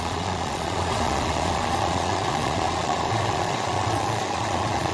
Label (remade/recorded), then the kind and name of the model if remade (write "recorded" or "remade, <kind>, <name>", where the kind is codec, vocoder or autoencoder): remade, vocoder, Vocos